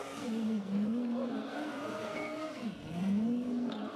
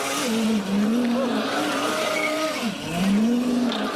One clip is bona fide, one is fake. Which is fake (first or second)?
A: first